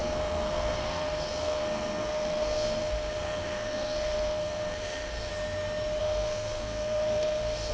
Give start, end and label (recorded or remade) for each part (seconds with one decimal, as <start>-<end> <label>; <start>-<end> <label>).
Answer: 0.0-5.3 remade; 5.3-6.0 recorded; 6.0-7.7 remade